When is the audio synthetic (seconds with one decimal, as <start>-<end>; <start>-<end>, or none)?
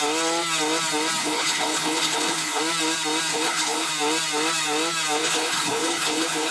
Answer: 1.2-2.6; 3.3-3.9; 5.2-6.5